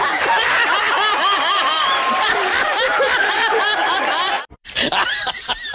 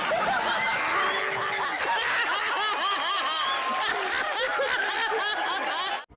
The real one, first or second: second